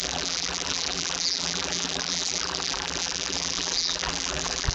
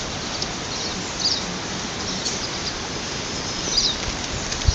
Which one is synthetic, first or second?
first